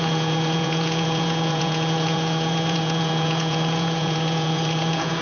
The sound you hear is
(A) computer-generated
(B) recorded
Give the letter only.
A